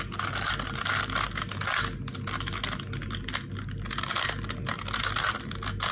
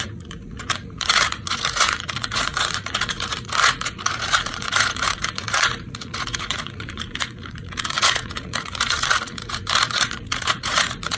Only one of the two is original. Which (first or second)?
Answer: first